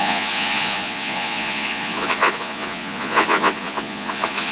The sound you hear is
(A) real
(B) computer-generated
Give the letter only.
B